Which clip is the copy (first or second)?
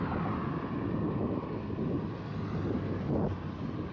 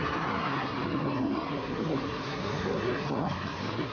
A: second